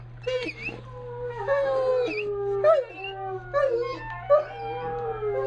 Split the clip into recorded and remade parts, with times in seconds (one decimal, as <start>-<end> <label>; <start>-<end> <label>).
0.0-5.5 recorded